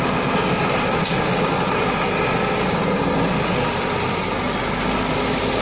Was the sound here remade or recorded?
recorded